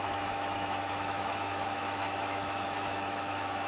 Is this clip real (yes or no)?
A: no